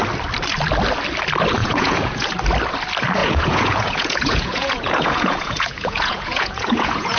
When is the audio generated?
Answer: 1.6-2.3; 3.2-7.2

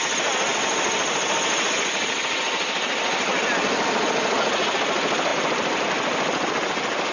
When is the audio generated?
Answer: none

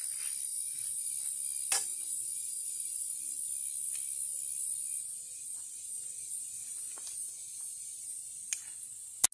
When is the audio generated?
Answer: 0.5-1.1; 1.9-3.2

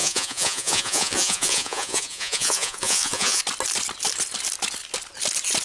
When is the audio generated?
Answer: 0.0-3.4

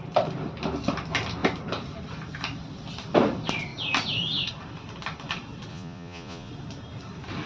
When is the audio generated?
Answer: 5.7-6.5

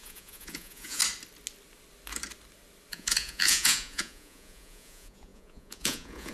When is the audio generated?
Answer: 0.0-1.0; 2.9-6.3